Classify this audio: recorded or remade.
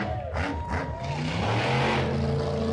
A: recorded